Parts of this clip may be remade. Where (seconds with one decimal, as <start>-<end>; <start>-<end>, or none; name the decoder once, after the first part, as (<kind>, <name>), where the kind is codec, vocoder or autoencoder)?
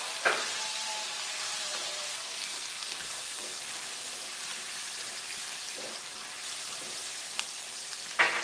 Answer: 2.1-3.6 (codec, SNAC)